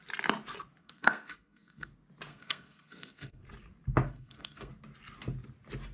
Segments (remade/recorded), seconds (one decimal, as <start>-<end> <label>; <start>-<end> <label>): 0.0-0.8 recorded; 0.8-1.9 remade; 1.9-2.3 recorded; 2.3-3.4 remade; 3.4-4.0 recorded; 4.0-4.7 remade; 4.7-5.9 recorded